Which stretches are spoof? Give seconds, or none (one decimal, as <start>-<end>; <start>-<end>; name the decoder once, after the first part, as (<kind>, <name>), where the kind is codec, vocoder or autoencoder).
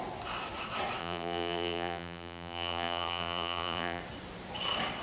1.0-4.0 (vocoder, BigVGAN v2)